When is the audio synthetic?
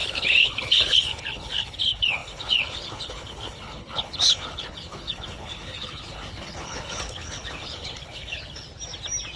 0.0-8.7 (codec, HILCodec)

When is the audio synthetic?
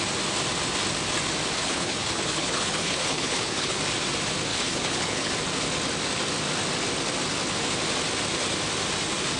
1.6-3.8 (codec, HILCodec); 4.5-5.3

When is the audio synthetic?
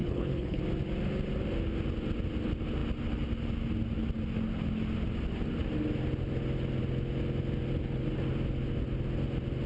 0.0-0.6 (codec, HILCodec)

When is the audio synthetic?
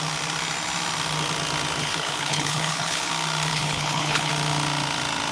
1.8-3.1 (codec, HILCodec); 3.5-4.3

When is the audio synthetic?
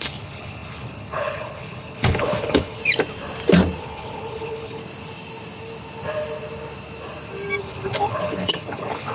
0.0-2.8 (codec, HILCodec); 3.8-4.8; 7.6-9.1